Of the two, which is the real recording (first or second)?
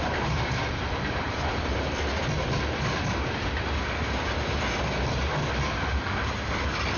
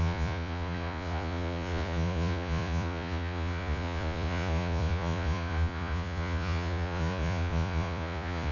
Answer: first